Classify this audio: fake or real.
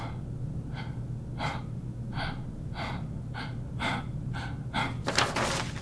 real